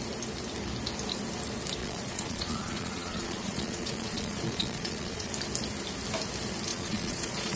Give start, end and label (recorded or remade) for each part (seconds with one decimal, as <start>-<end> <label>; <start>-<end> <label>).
0.0-1.8 recorded; 1.8-5.3 remade; 5.3-6.7 recorded; 6.7-7.6 remade